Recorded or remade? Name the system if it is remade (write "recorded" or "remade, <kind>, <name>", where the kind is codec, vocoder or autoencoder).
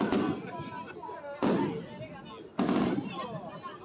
recorded